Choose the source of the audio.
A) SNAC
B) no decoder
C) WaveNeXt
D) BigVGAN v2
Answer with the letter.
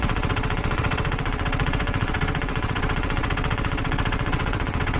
C